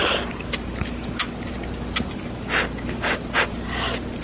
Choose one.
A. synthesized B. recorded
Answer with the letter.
B